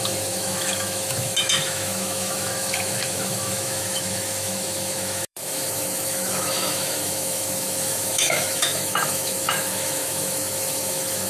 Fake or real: fake